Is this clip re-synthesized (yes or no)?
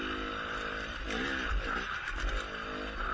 no